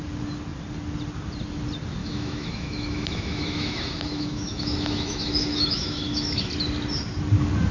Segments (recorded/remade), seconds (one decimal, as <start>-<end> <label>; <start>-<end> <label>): 0.0-2.0 recorded; 2.0-6.5 remade; 6.5-7.7 recorded